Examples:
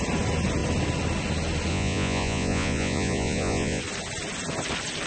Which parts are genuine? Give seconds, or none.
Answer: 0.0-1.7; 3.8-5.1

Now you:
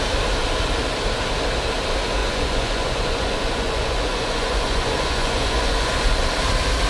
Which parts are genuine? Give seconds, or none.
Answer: 0.0-2.2; 6.3-6.9

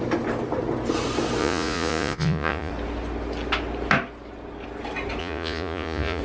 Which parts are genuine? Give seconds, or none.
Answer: 0.0-1.4; 2.7-5.2

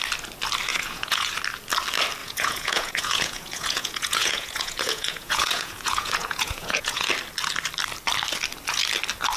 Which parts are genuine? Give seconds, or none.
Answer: 0.0-0.7; 1.3-2.2; 7.1-9.4

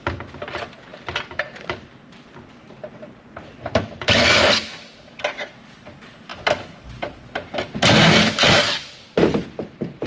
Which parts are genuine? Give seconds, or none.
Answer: 0.0-10.1

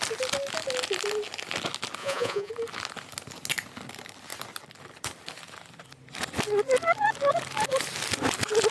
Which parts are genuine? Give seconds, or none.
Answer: 0.0-2.0; 2.5-8.7

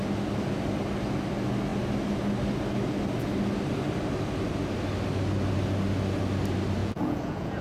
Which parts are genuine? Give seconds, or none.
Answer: 0.0-6.8

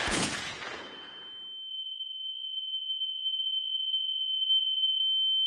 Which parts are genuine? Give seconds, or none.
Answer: 1.1-1.7; 5.0-5.5